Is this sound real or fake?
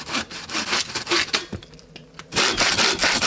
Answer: real